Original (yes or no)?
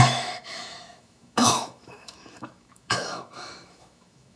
no